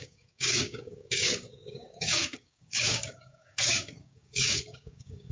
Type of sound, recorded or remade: remade